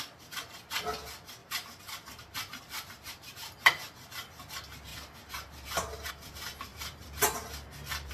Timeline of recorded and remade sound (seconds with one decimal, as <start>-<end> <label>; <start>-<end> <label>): 0.0-1.4 recorded; 1.4-2.6 remade; 2.6-4.9 recorded; 4.9-6.1 remade; 6.1-6.7 recorded; 6.7-8.1 remade